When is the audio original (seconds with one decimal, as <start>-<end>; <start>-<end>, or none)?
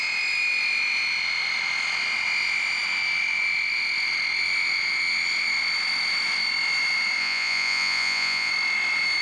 0.0-7.2; 8.5-9.2